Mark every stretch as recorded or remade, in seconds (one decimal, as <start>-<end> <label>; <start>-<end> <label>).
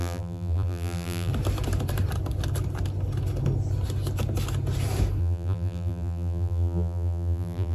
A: 0.0-1.3 remade; 1.3-5.2 recorded; 5.2-7.7 remade